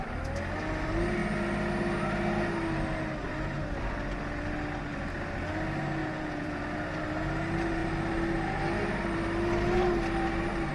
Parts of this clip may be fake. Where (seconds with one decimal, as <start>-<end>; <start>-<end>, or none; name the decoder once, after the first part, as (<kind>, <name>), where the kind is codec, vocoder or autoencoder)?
6.0-6.6 (vocoder, Vocos)